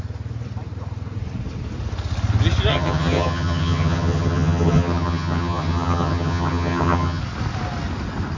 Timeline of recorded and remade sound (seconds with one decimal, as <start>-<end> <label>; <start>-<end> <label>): 0.0-2.7 recorded; 2.7-7.2 remade; 7.2-8.4 recorded